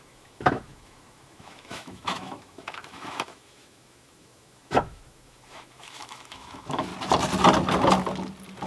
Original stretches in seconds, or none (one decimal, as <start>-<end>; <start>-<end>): 6.9-8.7